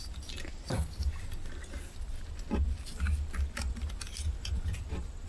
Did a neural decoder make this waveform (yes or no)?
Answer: no